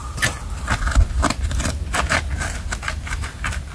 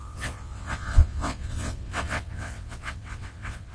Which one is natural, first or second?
first